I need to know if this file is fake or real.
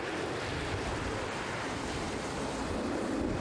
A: fake